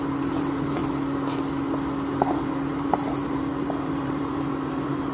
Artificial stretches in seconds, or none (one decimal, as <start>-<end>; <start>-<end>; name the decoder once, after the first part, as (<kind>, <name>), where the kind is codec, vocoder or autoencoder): 0.0-0.8 (vocoder, BigVGAN v2); 2.1-5.1